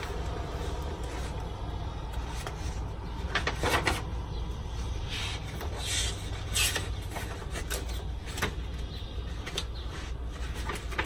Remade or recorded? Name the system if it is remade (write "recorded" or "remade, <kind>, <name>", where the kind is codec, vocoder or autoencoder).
recorded